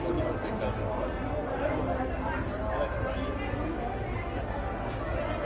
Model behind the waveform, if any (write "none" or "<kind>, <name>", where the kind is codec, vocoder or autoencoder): none